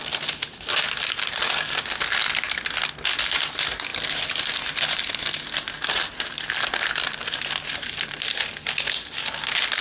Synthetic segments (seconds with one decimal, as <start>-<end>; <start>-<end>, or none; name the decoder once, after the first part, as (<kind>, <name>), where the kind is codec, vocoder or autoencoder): none